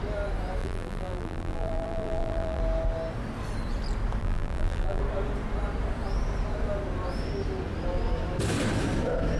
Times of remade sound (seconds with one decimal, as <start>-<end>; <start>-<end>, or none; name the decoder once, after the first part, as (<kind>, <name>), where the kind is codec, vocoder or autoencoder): 0.6-2.6 (vocoder, BigVGAN v2); 4.2-5.0